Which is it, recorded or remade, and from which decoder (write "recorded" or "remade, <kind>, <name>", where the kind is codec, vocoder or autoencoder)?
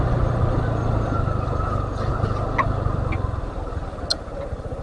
recorded